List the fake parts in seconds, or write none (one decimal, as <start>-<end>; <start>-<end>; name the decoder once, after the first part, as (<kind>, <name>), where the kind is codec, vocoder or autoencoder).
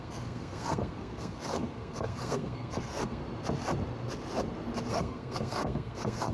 0.0-3.2 (codec, SNAC); 4.9-6.3